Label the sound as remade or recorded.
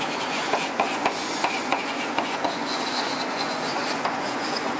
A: remade